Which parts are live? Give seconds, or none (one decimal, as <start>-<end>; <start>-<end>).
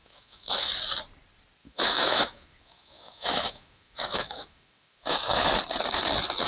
0.7-1.6; 5.5-6.5